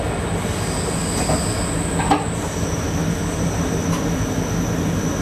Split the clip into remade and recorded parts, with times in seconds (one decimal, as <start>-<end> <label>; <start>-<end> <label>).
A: 0.0-5.2 recorded